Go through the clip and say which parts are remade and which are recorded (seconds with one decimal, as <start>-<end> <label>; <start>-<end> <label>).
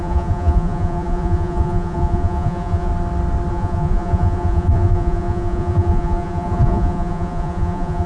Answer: 0.0-2.9 remade; 2.9-3.5 recorded; 3.5-8.1 remade